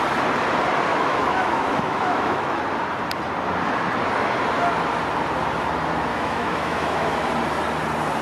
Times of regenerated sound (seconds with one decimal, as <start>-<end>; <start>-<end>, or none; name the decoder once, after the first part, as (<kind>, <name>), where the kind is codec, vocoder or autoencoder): 0.9-2.6 (autoencoder, DAC-VAE); 6.1-7.3